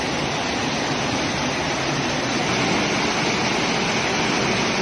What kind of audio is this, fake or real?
real